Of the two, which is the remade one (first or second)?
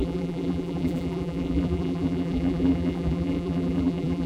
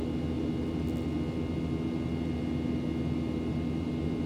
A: first